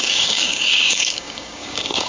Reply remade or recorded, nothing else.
remade